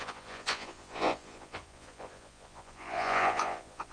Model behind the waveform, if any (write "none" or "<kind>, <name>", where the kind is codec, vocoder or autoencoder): vocoder, Vocos